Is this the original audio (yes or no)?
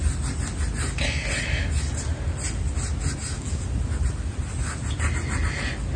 yes